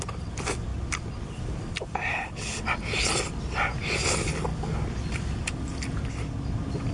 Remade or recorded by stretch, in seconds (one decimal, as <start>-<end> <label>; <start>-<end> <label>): 0.0-2.1 recorded; 2.1-2.6 remade; 2.6-6.9 recorded

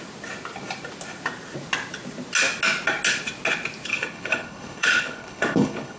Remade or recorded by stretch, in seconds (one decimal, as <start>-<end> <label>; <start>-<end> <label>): 0.0-3.9 recorded; 3.9-6.0 remade

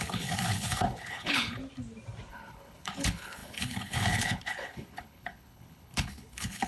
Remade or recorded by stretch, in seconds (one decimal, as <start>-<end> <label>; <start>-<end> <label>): 0.0-1.6 remade; 1.6-2.3 recorded; 2.3-6.7 remade